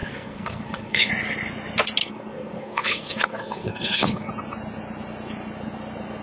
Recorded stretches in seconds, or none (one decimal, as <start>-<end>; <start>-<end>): 1.1-2.0; 4.3-6.2